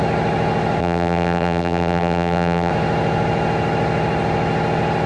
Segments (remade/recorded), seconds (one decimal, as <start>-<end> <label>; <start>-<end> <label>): 0.0-0.8 recorded; 0.8-2.7 remade; 2.7-5.1 recorded